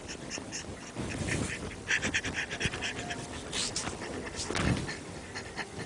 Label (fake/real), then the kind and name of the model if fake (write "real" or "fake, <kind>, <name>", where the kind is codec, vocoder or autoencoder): real